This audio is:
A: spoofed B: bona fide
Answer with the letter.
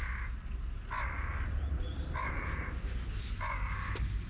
B